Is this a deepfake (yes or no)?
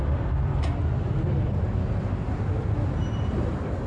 no